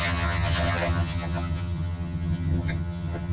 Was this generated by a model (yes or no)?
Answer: yes